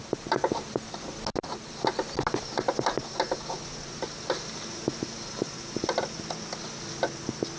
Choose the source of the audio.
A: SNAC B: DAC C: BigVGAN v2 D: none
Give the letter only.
D